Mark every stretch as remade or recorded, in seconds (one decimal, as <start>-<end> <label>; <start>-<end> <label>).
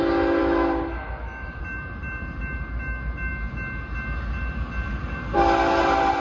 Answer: 0.0-0.4 recorded; 0.4-1.6 remade; 1.6-6.2 recorded